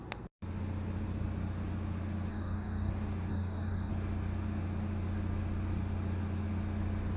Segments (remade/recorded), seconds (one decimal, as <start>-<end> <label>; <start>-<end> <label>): 0.0-2.3 recorded; 2.3-2.9 remade; 2.9-3.3 recorded; 3.3-3.9 remade; 3.9-7.2 recorded